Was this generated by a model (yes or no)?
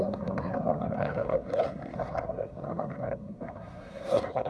yes